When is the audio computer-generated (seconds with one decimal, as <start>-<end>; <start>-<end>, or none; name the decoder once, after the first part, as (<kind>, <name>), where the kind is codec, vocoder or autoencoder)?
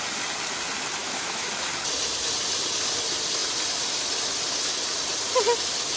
1.0-1.5 (autoencoder, DAC-VAE)